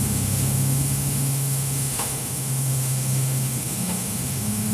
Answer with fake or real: fake